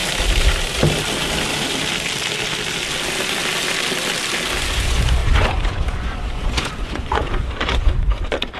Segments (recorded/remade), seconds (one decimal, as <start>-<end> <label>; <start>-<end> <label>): 0.0-4.6 recorded; 4.6-8.6 remade